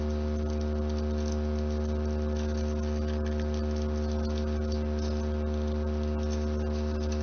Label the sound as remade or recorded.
recorded